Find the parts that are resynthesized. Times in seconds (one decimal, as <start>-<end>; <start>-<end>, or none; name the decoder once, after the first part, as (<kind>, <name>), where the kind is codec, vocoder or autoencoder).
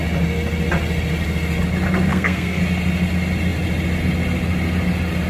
2.1-2.6 (codec, SNAC)